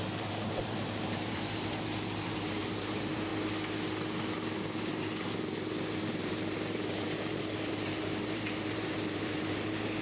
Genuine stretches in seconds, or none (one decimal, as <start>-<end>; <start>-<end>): 3.3-6.1